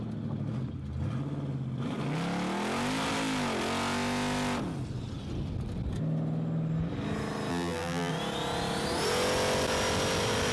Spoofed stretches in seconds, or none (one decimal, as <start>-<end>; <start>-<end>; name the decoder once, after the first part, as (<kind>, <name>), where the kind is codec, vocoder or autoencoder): 7.5-8.1 (vocoder, BigVGAN v2)